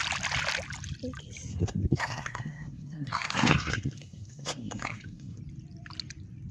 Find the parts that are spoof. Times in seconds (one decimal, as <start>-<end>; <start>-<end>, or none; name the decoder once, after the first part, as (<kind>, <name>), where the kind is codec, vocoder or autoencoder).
1.5-5.4 (codec, SNAC)